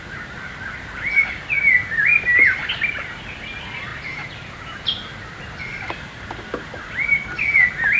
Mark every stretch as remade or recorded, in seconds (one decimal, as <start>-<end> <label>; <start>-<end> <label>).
0.0-8.0 recorded